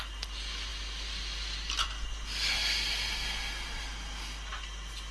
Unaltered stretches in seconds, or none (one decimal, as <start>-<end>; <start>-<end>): 0.0-5.1